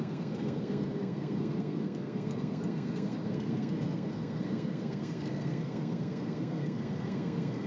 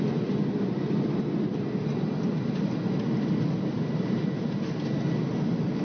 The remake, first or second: first